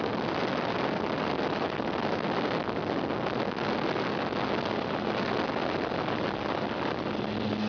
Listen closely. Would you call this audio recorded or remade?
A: recorded